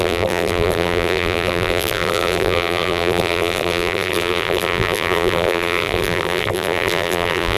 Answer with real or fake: fake